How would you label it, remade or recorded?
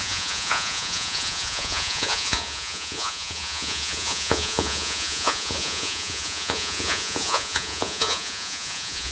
remade